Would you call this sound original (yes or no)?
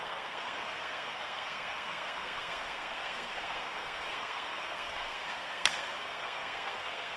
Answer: no